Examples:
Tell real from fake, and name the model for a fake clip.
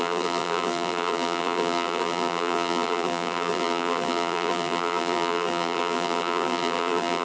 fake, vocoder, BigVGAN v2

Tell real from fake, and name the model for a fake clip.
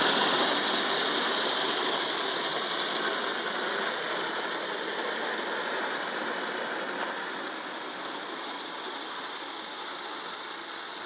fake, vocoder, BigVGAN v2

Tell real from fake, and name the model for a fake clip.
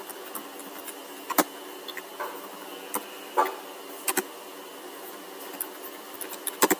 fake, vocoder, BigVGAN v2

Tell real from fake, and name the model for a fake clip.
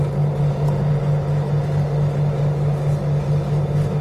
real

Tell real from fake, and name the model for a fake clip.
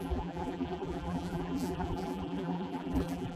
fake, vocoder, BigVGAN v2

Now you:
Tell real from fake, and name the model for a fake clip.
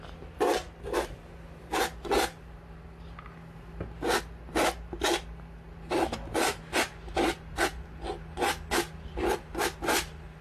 real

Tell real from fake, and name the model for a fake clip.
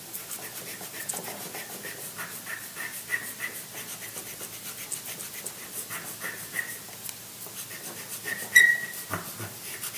real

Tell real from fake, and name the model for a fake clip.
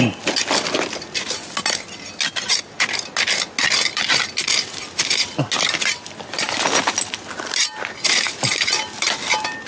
real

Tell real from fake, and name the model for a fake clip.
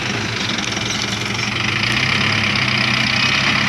real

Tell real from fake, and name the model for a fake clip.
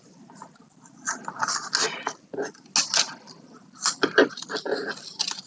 real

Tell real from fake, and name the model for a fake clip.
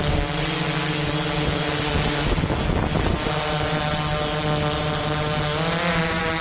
real